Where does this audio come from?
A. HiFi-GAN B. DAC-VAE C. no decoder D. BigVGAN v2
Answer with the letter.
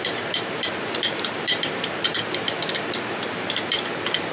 D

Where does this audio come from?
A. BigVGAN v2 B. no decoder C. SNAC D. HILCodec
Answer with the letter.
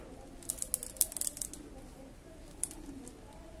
B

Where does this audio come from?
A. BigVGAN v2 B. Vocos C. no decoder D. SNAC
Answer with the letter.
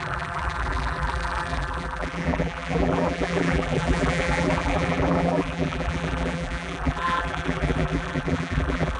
A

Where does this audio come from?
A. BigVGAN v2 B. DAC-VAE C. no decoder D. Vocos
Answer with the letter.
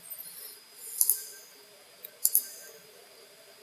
C